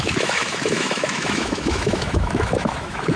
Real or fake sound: fake